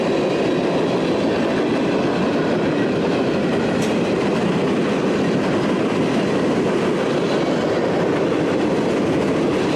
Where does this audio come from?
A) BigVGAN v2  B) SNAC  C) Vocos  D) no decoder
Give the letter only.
D